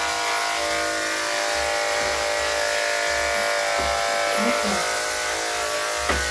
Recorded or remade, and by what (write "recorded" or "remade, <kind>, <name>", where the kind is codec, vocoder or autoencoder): recorded